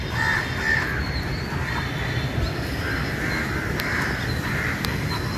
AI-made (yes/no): no